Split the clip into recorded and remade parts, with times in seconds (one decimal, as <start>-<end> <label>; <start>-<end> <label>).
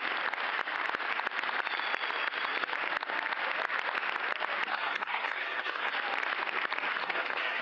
0.0-4.7 recorded; 4.7-5.9 remade; 5.9-7.0 recorded; 7.0-7.6 remade